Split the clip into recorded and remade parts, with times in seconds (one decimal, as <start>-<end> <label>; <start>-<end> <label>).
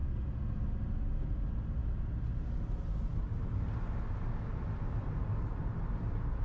0.0-6.4 recorded